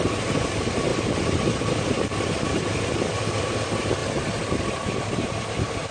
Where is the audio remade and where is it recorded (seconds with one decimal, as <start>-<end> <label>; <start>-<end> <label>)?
0.0-5.9 recorded